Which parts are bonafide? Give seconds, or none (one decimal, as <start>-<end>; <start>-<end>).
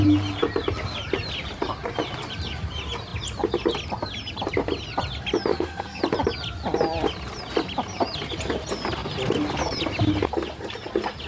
0.0-5.5; 6.0-11.3